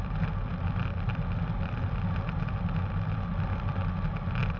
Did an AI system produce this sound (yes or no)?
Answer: no